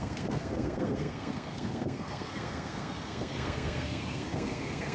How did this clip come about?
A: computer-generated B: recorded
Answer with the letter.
A